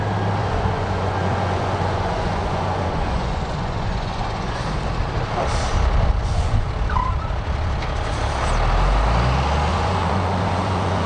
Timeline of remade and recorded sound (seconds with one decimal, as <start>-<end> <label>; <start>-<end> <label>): 0.0-0.4 recorded; 0.4-4.6 remade; 4.6-6.2 recorded; 6.2-6.7 remade; 6.7-9.7 recorded; 9.7-11.1 remade